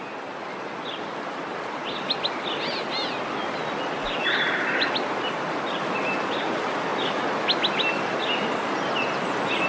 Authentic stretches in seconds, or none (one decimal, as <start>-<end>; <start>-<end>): 0.0-9.7